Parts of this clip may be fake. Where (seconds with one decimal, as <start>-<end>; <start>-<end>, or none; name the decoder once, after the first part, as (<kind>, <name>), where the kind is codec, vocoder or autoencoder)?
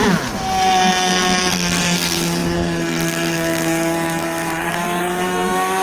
1.5-5.8 (codec, SNAC)